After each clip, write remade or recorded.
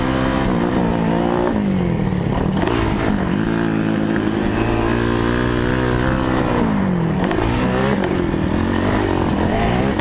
recorded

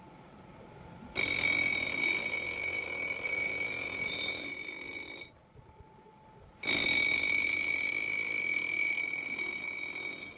recorded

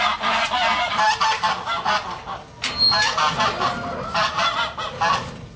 recorded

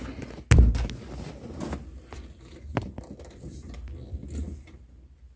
recorded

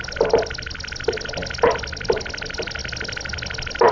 recorded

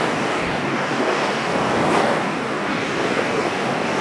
remade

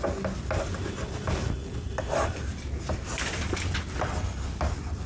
recorded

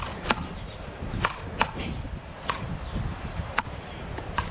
recorded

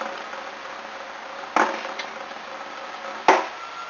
recorded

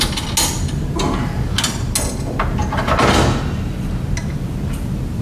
recorded